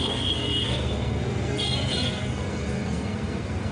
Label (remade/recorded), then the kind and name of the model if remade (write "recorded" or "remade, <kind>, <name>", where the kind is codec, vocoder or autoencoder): remade, codec, SNAC